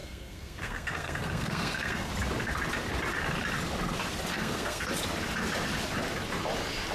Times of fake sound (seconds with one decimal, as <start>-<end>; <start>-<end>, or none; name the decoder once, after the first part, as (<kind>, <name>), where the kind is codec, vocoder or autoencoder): 0.0-2.1 (codec, SNAC); 4.3-4.9